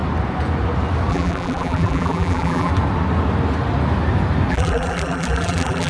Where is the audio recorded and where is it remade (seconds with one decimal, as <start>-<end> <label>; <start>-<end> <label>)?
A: 0.0-1.1 recorded; 1.1-2.7 remade; 2.7-4.5 recorded; 4.5-5.9 remade